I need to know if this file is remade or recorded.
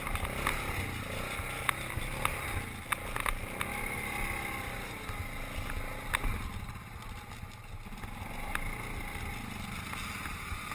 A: recorded